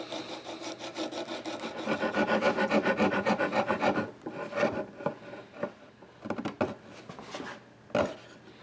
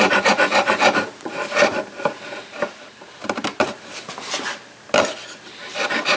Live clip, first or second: first